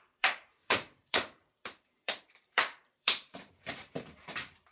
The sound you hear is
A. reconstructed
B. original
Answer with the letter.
A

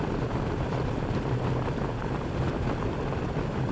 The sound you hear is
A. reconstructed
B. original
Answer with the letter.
B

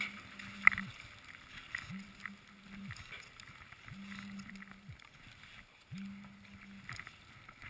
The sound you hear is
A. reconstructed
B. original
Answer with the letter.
B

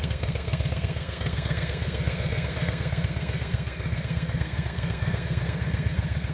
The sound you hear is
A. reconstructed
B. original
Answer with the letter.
A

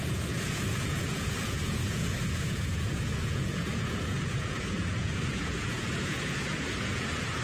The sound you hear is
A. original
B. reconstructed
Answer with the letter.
B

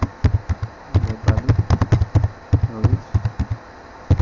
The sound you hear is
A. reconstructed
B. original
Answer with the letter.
B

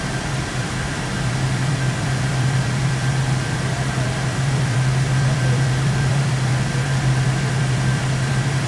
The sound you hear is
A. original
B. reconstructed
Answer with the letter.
B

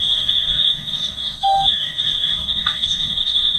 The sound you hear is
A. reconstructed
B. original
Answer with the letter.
A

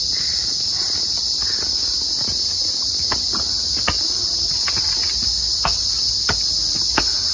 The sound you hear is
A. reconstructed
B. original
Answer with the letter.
B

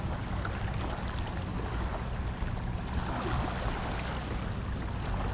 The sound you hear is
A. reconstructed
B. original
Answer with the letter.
B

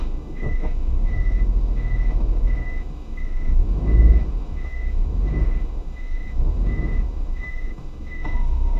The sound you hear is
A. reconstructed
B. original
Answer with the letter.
A